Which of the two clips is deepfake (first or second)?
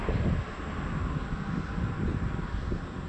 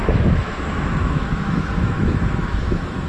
second